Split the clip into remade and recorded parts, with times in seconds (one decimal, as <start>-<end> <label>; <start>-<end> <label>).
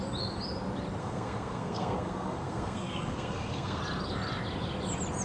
0.0-1.0 recorded; 1.0-3.8 remade; 3.8-5.2 recorded